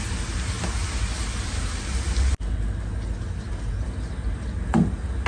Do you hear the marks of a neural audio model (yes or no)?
no